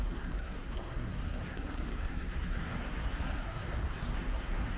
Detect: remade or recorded remade